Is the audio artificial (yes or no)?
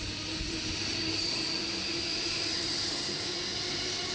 no